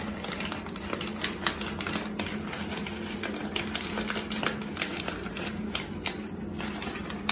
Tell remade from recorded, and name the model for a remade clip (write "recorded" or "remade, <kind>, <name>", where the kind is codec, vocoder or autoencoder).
recorded